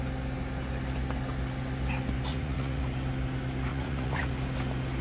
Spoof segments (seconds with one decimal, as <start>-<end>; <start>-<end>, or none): 2.3-2.8; 3.7-4.3